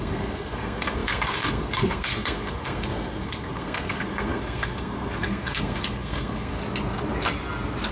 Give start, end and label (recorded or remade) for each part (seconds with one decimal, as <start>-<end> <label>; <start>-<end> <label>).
0.0-6.6 remade; 6.6-7.9 recorded